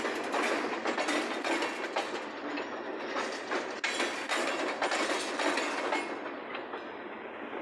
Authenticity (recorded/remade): recorded